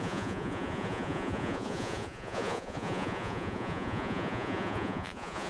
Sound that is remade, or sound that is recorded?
remade